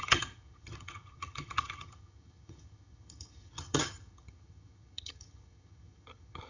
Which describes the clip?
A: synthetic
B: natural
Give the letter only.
A